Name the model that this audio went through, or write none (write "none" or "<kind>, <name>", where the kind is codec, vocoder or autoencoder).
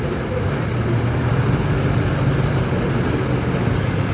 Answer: none